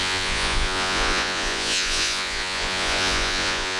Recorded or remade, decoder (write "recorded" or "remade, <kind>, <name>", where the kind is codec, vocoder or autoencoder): remade, vocoder, Vocos